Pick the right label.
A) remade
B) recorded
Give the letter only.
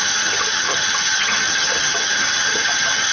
A